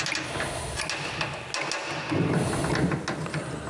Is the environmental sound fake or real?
real